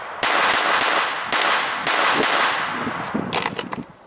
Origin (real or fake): real